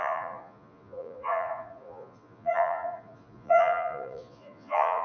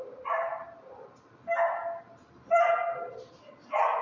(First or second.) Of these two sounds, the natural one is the second